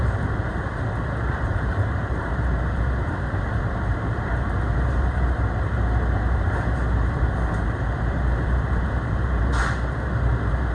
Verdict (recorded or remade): remade